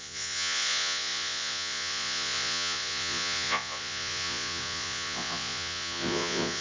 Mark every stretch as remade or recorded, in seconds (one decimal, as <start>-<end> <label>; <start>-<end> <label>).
0.0-6.6 remade